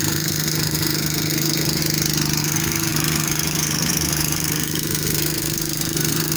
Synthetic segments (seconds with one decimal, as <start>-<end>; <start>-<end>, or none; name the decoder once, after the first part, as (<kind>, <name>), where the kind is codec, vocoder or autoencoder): 0.0-1.8 (codec, SNAC); 2.4-6.4